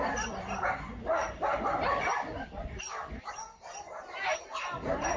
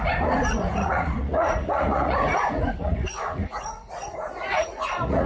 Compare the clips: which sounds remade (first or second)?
second